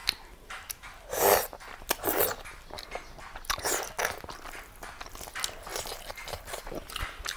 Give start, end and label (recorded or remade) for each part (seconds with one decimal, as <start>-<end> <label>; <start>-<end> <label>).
0.0-5.7 recorded; 5.7-7.0 remade; 7.0-7.4 recorded